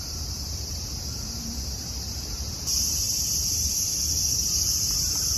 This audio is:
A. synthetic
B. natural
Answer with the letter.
A